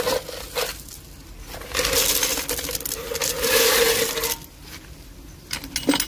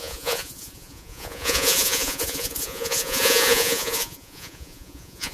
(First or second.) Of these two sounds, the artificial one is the second